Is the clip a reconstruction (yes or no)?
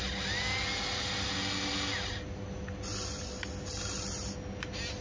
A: no